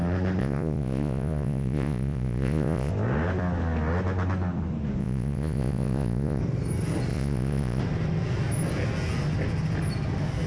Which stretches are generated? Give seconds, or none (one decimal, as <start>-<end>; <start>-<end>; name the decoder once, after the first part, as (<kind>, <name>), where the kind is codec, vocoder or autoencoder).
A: 0.4-2.9 (vocoder, Vocos); 5.0-6.4; 7.1-7.8